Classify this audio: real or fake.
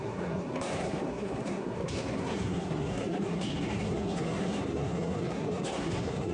fake